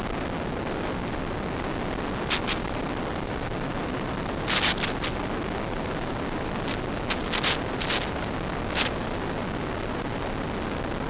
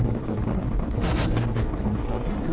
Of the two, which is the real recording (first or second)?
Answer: first